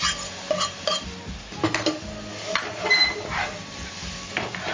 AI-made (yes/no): no